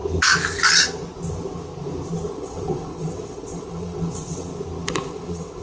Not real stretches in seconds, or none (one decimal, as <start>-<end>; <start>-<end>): 2.3-4.5; 5.1-5.6